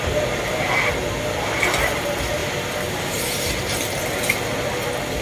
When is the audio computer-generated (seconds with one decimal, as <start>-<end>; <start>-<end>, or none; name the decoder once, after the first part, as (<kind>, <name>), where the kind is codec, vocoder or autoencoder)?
none